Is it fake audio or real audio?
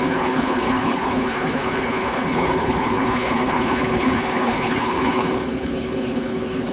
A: fake